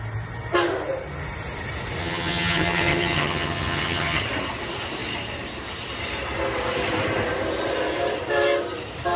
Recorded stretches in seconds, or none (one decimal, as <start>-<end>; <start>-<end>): 0.0-2.0; 4.2-9.2